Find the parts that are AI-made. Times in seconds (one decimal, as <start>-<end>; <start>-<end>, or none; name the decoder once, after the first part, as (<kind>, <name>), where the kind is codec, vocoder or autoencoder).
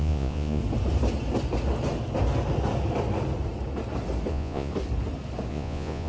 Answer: 0.0-0.6 (vocoder, Vocos); 4.3-4.7; 5.5-6.1